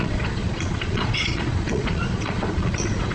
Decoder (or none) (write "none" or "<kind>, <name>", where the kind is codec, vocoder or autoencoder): vocoder, Vocos